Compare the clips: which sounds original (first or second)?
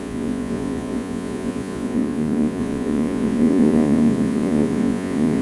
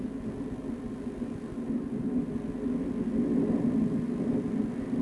second